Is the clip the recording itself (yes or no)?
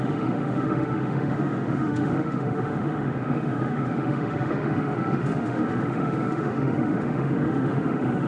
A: no